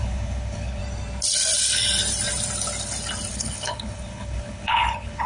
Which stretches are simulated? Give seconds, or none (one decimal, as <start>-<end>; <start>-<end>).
0.0-0.8; 3.3-5.3